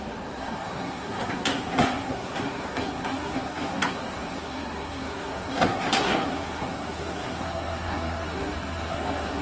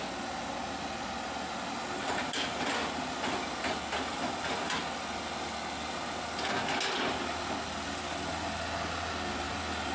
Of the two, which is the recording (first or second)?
second